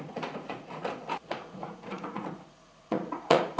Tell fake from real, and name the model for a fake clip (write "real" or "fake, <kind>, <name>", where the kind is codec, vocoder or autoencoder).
fake, vocoder, Vocos